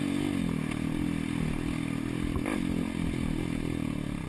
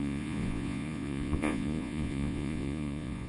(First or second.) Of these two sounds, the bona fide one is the first